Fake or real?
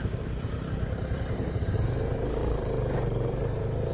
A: fake